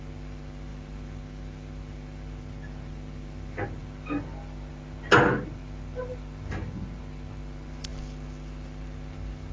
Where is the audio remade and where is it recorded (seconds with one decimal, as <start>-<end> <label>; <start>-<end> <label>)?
0.0-9.5 recorded